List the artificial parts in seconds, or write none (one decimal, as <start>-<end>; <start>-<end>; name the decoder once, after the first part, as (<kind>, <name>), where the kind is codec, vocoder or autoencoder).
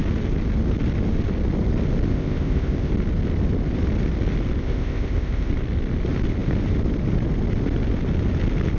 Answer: 2.1-2.9 (codec, ZipCodec); 4.6-5.5